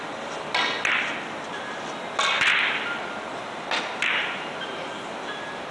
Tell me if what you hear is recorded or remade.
recorded